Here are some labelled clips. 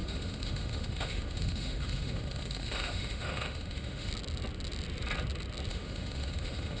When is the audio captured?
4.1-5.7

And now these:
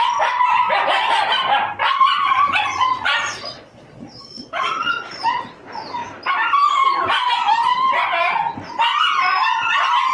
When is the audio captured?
0.0-1.8; 5.3-10.1

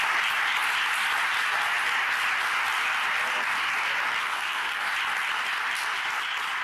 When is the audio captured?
0.0-4.2; 4.9-6.6

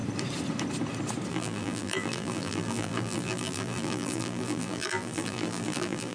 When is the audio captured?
0.0-1.3

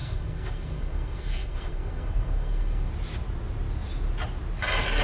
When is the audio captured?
2.9-5.0

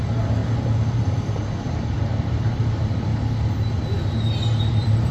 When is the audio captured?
3.1-4.3